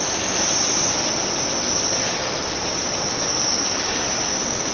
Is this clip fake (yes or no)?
no